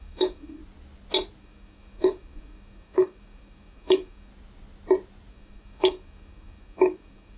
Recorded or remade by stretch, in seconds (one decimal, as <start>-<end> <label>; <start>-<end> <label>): 0.0-0.6 remade; 0.6-1.4 recorded; 1.4-4.3 remade; 4.3-5.3 recorded; 5.3-7.4 remade